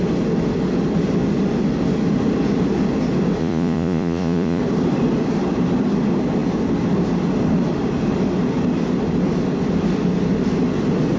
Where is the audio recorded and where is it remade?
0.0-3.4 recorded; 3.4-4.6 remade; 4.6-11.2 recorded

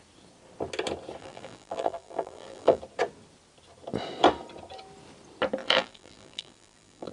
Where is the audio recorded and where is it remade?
0.0-1.2 recorded; 1.2-2.8 remade; 2.8-5.6 recorded; 5.6-7.1 remade

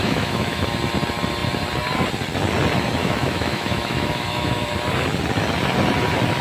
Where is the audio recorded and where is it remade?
0.0-0.6 remade; 0.6-3.0 recorded; 3.0-4.7 remade; 4.7-6.4 recorded

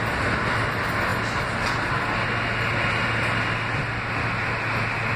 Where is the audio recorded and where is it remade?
0.0-5.2 recorded

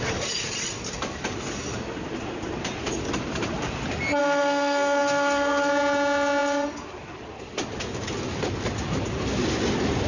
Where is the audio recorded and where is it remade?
0.0-4.2 recorded; 4.2-5.7 remade; 5.7-10.1 recorded